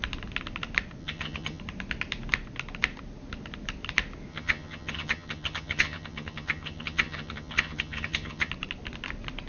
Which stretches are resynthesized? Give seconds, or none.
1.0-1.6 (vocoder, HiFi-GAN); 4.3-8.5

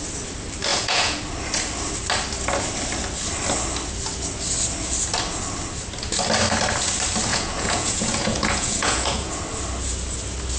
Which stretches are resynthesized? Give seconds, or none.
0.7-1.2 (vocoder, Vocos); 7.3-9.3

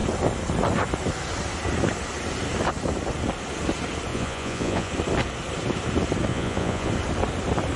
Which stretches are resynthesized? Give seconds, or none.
4.1-4.9 (vocoder, Vocos); 6.3-6.9